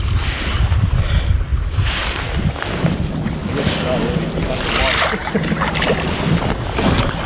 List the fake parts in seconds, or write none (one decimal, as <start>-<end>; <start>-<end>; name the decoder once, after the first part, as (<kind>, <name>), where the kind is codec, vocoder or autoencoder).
none